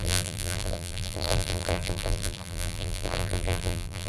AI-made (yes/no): yes